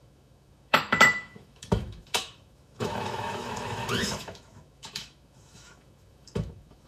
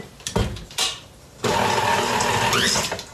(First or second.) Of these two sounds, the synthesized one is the first